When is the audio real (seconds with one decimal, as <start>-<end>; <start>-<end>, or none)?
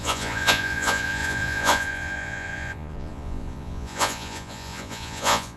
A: none